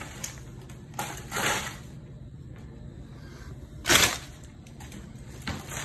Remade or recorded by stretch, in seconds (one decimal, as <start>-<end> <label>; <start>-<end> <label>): 0.0-5.8 remade